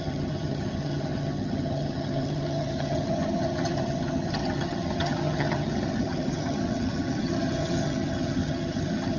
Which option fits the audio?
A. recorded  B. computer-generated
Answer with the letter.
B